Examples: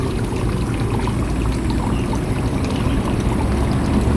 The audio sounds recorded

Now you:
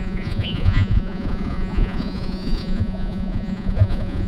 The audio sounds remade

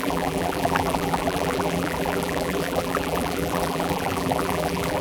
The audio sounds remade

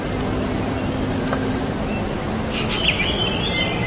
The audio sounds recorded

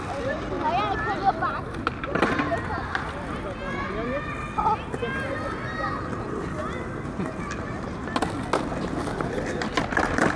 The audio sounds recorded